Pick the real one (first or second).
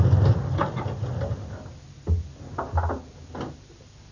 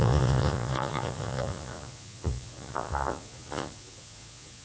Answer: first